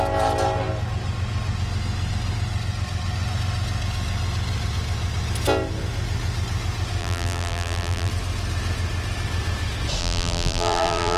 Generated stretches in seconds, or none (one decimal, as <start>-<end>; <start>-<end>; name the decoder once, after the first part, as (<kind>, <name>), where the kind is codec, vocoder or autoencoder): 7.0-8.1 (vocoder, BigVGAN v2); 10.0-11.2